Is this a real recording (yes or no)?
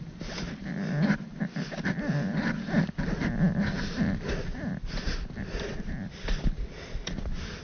yes